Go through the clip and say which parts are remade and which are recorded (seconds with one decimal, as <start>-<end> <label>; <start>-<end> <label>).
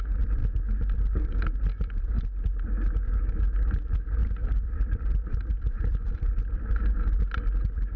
0.0-4.2 recorded; 4.2-7.2 remade; 7.2-8.0 recorded